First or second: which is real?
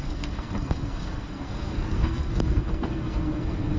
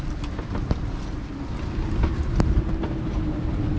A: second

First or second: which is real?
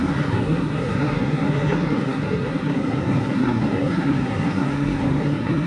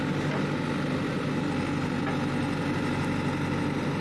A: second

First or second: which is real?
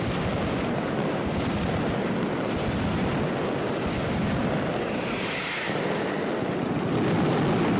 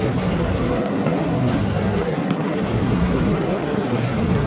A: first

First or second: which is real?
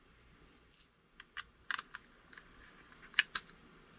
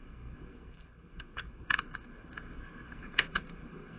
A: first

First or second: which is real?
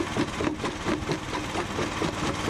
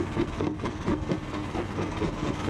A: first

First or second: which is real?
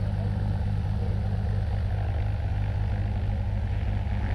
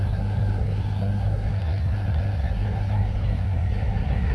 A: first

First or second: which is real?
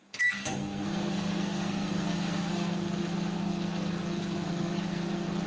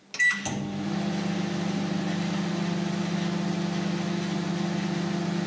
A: second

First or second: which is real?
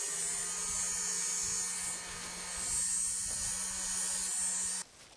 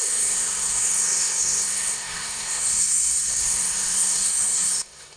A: first